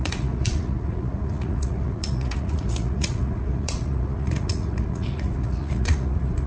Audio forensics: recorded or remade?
remade